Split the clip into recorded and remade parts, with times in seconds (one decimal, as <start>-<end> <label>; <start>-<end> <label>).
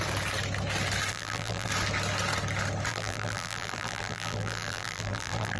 0.0-1.1 recorded; 1.1-1.7 remade; 1.7-2.9 recorded; 2.9-5.6 remade